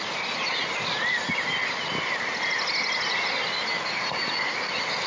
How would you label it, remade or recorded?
recorded